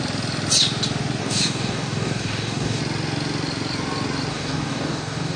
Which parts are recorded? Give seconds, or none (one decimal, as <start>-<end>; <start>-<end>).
0.0-1.2; 2.8-4.3